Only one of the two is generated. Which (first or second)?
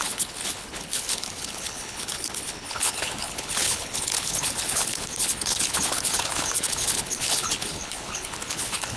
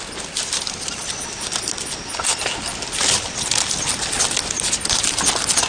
first